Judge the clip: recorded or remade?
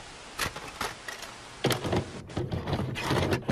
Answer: recorded